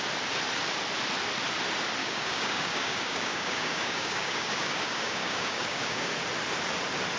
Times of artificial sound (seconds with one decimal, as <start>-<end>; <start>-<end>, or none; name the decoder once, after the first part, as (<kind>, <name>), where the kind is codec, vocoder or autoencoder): 2.0-6.1 (codec, DAC)